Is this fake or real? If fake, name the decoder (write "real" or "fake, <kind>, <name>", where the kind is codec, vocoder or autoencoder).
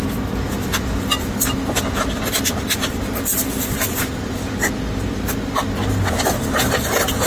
real